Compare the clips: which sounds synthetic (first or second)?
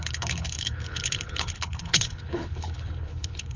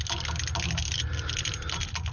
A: first